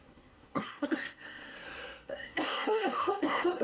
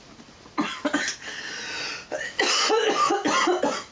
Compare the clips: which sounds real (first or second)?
second